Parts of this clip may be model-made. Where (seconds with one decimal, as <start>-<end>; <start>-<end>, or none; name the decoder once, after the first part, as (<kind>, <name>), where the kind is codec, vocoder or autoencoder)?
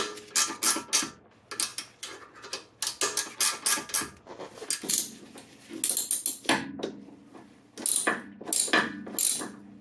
none